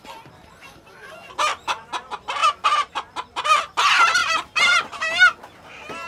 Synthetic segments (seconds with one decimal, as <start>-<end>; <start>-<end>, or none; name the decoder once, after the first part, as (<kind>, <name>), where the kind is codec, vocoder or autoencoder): 4.2-4.7 (vocoder, BigVGAN v2)

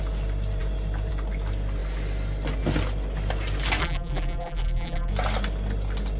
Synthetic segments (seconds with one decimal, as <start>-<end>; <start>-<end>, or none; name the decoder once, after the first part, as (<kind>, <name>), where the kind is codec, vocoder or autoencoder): 3.8-5.1 (vocoder, BigVGAN v2)